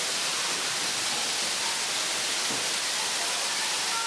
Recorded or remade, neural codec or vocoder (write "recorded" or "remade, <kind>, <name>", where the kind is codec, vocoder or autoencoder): recorded